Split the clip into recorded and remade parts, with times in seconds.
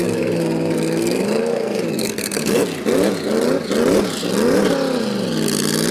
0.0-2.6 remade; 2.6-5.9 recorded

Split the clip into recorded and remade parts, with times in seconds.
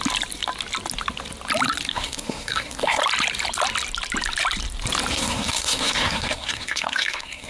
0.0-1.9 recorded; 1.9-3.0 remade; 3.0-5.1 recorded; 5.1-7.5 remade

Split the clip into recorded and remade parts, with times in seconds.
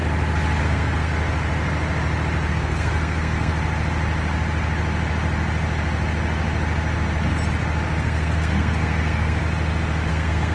0.0-0.6 recorded; 0.6-1.1 remade; 1.1-2.5 recorded; 2.5-3.5 remade; 3.5-8.0 recorded; 8.0-9.4 remade; 9.4-10.1 recorded; 10.1-10.5 remade